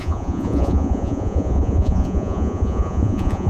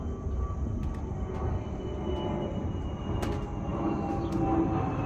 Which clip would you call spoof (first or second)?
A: first